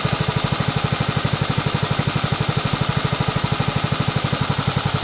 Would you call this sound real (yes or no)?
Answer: yes